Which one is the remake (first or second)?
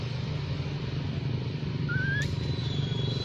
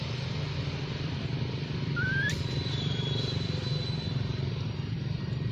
second